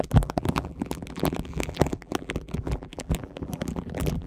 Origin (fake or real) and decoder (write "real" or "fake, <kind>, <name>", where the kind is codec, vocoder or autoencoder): fake, vocoder, BigVGAN v2